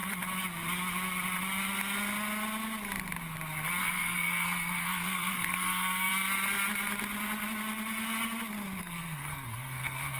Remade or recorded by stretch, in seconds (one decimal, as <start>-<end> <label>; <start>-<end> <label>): 0.0-3.8 recorded; 3.8-6.1 remade; 6.1-8.8 recorded; 8.8-10.2 remade